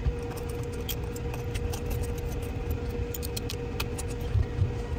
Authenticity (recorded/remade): recorded